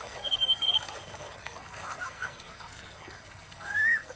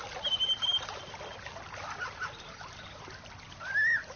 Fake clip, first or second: first